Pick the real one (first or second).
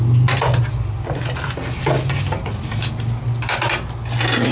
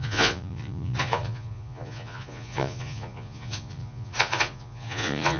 first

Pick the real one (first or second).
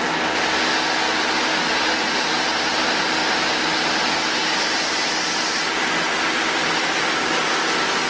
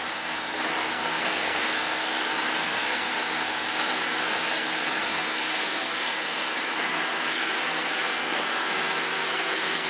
first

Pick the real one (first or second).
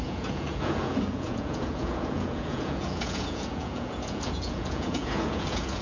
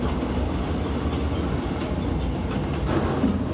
second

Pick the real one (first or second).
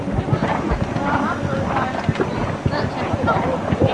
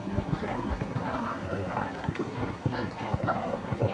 first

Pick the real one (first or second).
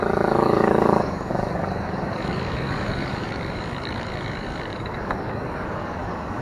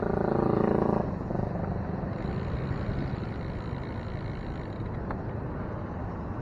second